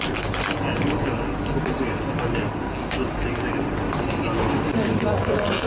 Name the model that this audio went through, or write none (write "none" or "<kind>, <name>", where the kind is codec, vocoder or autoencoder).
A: none